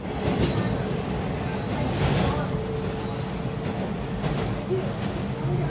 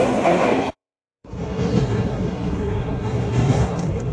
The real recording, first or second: first